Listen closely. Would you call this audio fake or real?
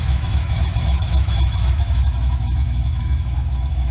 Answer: fake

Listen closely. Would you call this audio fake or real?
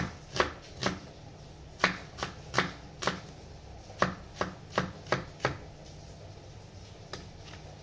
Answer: real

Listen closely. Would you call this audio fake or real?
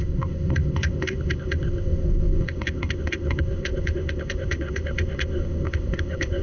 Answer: fake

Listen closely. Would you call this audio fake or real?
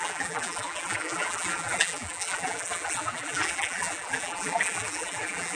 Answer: fake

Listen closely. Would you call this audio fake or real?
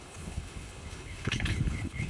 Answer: fake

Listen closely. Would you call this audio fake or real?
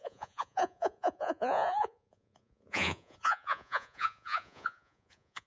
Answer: fake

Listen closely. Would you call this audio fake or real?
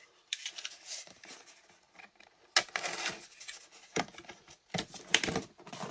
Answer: real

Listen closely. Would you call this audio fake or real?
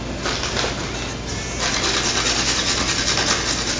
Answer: real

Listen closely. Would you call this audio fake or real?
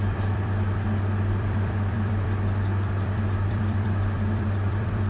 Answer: fake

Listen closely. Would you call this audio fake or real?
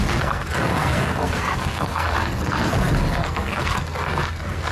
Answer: fake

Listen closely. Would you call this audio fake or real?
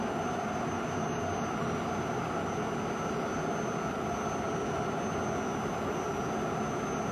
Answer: real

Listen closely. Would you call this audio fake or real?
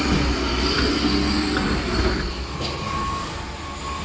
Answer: real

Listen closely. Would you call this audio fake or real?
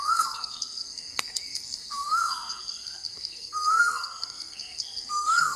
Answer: fake